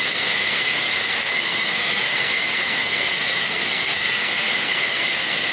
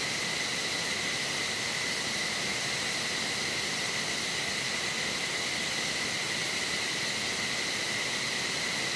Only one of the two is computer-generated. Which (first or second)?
first